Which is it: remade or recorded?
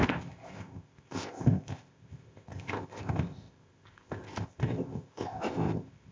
remade